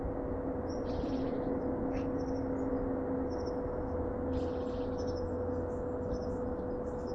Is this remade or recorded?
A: recorded